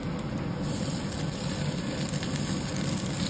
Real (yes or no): yes